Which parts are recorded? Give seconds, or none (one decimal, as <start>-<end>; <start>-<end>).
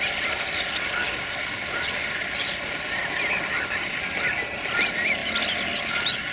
0.0-6.3